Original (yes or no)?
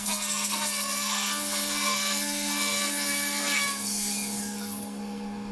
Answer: no